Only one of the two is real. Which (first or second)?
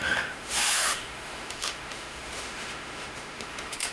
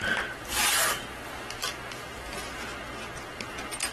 second